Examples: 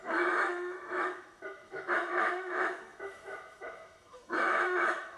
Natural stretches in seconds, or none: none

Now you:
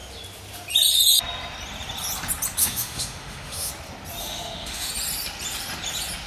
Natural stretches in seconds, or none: 0.0-2.6; 3.7-4.2; 4.9-6.3

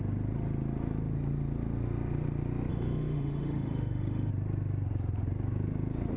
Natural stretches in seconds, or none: 0.0-2.7; 4.3-6.2

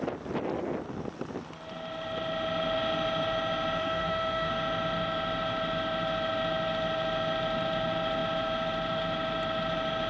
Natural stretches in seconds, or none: 0.0-3.8; 4.5-10.1

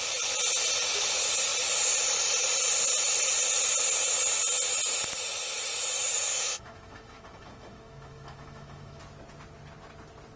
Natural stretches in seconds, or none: 0.0-6.3; 9.0-10.4

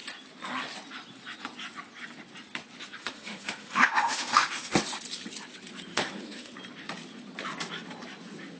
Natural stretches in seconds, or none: 0.0-3.0; 4.7-5.9; 6.5-8.6